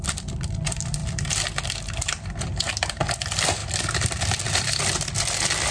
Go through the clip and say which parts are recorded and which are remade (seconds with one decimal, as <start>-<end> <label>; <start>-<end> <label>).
0.0-1.0 remade; 1.0-2.7 recorded; 2.7-5.7 remade